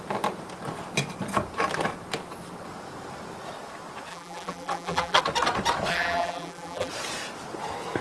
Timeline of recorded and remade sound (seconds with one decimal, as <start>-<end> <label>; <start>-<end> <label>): 0.0-4.1 recorded; 4.1-5.2 remade; 5.2-5.9 recorded; 5.9-6.9 remade; 6.9-8.0 recorded

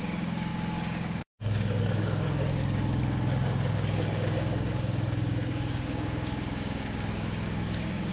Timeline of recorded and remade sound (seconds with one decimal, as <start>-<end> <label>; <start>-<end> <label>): 0.0-8.1 remade

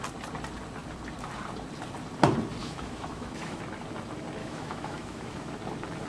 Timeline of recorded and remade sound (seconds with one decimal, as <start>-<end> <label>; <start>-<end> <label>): 0.0-2.6 recorded; 2.6-3.6 remade; 3.6-4.4 recorded; 4.4-5.5 remade; 5.5-6.1 recorded

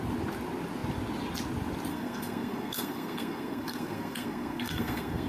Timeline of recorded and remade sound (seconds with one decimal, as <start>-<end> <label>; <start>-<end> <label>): 0.0-1.9 recorded; 1.9-5.3 remade

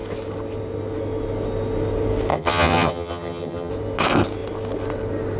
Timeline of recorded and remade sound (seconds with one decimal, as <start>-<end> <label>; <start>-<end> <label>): 0.0-2.3 recorded; 2.3-3.7 remade; 3.7-5.4 recorded

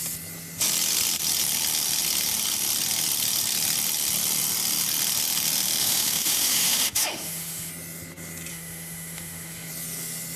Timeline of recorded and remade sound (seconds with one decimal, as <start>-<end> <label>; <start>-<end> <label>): 0.0-5.8 recorded; 5.8-7.7 remade; 7.7-8.5 recorded; 8.5-9.7 remade; 9.7-10.4 recorded

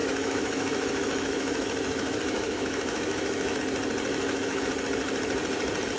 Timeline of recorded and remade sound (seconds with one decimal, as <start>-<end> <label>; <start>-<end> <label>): 0.0-3.6 remade; 3.6-4.1 recorded; 4.1-4.7 remade; 4.7-6.0 recorded